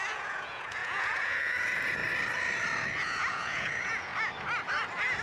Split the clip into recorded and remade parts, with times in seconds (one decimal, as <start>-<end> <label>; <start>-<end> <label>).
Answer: 0.0-2.0 remade; 2.0-3.0 recorded; 3.0-4.1 remade; 4.1-5.2 recorded